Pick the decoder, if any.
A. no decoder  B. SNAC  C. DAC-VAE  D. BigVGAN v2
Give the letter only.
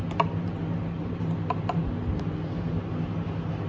A